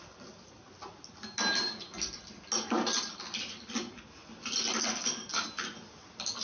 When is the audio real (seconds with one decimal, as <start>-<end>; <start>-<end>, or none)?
0.0-6.4